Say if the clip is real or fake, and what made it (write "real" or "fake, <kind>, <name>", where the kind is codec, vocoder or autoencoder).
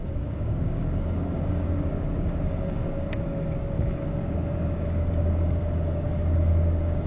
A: fake, codec, DAC